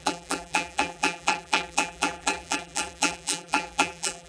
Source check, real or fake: fake